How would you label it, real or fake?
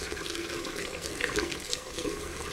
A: fake